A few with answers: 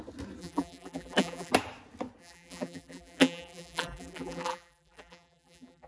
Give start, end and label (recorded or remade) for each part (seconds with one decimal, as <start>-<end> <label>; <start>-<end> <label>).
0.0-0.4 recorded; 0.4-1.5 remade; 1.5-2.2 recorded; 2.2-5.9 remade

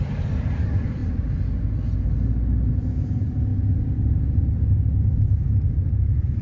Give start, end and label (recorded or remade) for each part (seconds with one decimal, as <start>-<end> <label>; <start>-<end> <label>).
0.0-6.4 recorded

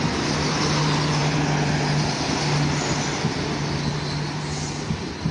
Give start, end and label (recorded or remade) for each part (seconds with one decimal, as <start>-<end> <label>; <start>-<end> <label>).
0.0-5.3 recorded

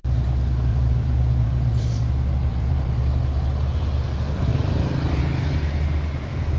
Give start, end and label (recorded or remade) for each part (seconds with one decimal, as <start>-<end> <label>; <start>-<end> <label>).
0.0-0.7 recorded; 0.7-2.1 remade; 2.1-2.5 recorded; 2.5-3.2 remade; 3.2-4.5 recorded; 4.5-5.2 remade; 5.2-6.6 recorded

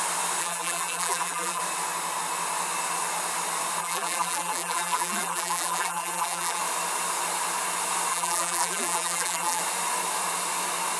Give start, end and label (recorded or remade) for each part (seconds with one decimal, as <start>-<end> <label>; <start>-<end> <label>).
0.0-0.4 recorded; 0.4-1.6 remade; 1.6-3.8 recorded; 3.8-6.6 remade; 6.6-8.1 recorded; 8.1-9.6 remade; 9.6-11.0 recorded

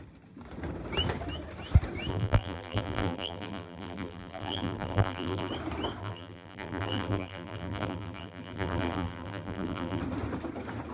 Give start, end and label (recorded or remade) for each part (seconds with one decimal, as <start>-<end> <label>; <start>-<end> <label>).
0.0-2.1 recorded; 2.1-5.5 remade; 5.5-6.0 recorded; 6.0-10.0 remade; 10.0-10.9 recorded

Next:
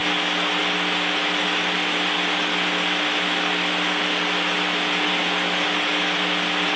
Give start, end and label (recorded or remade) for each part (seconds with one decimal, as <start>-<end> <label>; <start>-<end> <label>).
0.0-6.8 recorded